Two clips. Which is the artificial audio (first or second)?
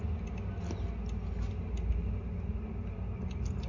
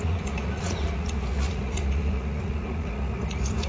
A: second